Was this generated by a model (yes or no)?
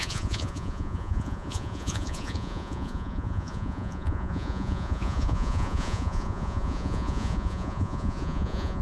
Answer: yes